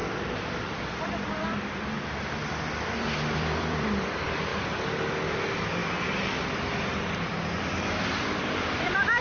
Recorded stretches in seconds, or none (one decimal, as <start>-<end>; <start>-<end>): 4.5-5.3; 5.8-8.0